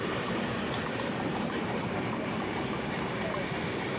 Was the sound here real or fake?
fake